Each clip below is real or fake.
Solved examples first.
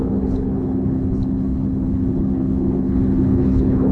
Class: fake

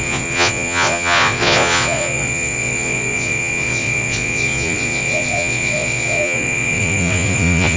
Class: fake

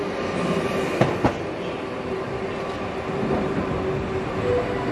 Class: real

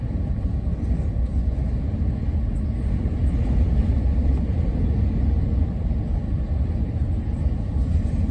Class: real